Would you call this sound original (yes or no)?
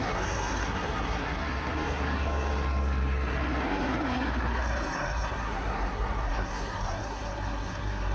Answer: no